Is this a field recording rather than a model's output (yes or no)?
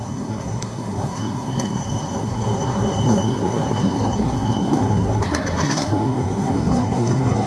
no